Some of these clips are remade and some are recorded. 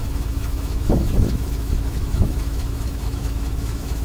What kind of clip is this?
remade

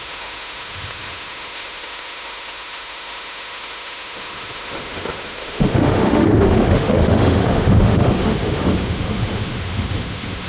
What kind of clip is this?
remade